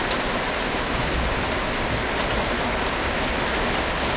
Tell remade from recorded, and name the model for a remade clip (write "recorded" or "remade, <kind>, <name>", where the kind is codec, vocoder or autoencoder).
recorded